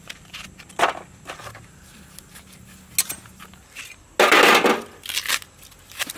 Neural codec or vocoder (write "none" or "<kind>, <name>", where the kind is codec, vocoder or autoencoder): none